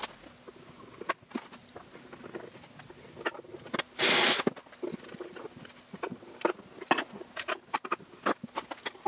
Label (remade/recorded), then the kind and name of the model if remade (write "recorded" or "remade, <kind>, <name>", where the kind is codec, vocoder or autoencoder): recorded